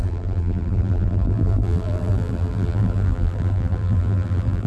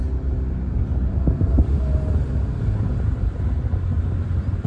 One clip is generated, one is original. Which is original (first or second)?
second